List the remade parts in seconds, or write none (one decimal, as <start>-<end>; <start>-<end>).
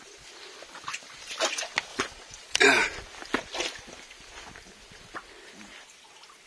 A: 1.9-2.6